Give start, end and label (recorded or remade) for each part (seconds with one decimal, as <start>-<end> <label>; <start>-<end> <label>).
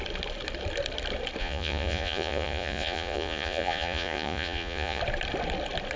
0.0-1.4 recorded; 1.4-5.0 remade; 5.0-6.0 recorded